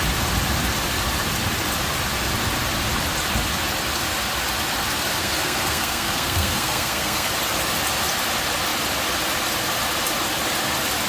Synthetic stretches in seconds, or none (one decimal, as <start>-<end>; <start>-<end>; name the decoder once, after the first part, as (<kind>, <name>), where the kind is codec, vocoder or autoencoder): 5.1-7.3 (codec, SNAC)